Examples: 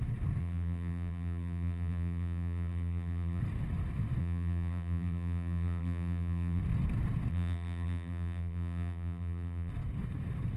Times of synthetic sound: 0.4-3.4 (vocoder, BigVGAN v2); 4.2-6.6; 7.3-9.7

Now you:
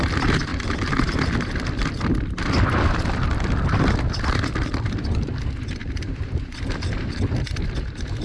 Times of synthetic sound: 0.5-5.3 (vocoder, BigVGAN v2); 5.8-6.4

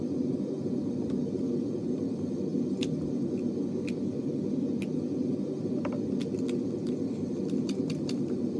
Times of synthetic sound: 0.0-2.5 (vocoder, BigVGAN v2); 5.3-8.6